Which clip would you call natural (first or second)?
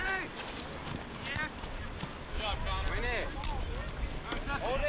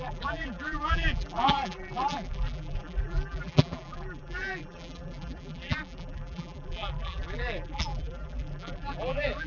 first